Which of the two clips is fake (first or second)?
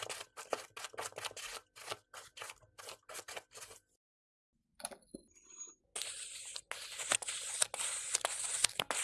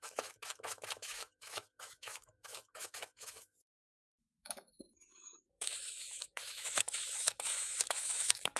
second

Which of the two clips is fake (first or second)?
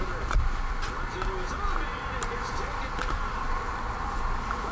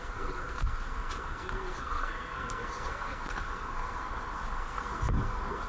second